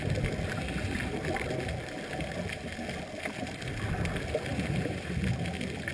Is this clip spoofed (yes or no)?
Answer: no